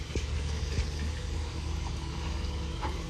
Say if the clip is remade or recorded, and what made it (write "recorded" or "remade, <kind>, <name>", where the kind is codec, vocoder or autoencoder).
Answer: remade, codec, DAC